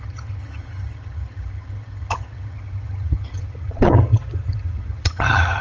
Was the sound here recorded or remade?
remade